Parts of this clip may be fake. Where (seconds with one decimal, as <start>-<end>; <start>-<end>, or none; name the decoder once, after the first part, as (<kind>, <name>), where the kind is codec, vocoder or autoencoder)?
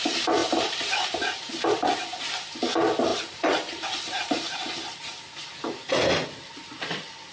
0.4-1.5 (vocoder, BigVGAN v2); 3.1-4.6